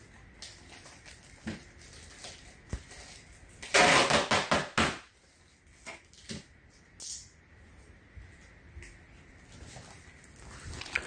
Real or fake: real